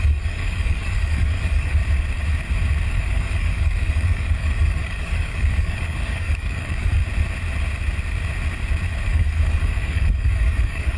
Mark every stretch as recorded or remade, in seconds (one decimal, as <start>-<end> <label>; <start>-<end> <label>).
0.0-1.8 remade; 1.8-2.9 recorded; 2.9-7.0 remade; 7.0-9.0 recorded; 9.0-11.0 remade